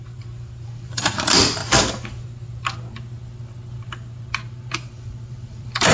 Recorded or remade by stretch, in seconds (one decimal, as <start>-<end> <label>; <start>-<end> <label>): 0.0-1.6 remade; 1.6-4.3 recorded; 4.3-5.9 remade